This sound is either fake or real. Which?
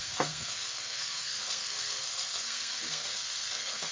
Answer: fake